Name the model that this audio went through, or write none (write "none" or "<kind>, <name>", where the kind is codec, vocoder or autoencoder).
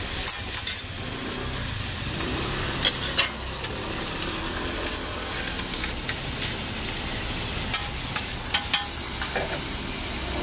none